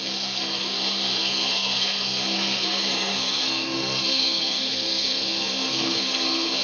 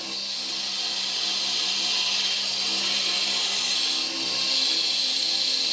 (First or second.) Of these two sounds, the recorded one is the second